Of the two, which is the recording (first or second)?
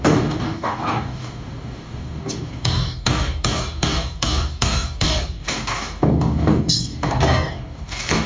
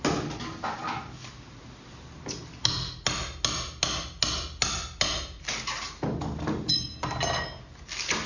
second